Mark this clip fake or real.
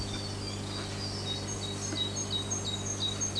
real